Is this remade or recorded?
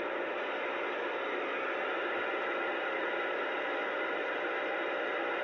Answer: recorded